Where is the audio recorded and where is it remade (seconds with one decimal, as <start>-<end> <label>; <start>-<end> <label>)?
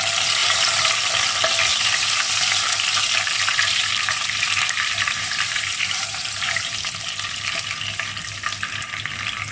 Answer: 0.0-0.4 recorded; 0.4-0.9 remade; 0.9-1.7 recorded; 1.7-2.2 remade; 2.2-3.8 recorded; 3.8-6.8 remade; 6.8-9.5 recorded